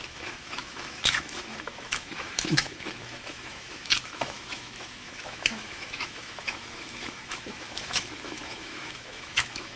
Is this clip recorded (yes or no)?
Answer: no